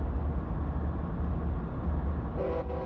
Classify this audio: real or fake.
real